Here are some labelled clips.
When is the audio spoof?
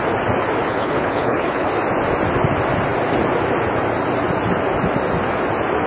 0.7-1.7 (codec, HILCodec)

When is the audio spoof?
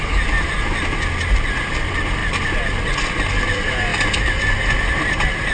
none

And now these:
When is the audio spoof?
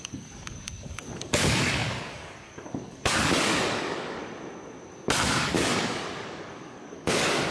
0.0-4.2 (codec, DAC); 5.3-7.5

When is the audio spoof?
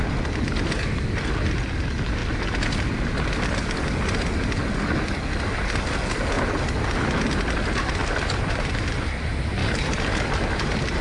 8.0-8.7 (vocoder, BigVGAN v2); 9.6-11.0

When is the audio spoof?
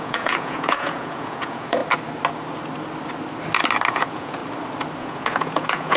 0.0-1.8 (vocoder, Vocos); 3.9-4.4; 5.0-6.0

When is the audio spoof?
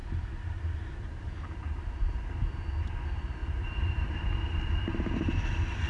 none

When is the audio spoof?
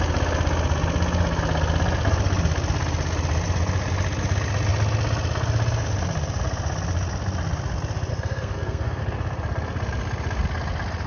8.1-9.0 (codec, SNAC)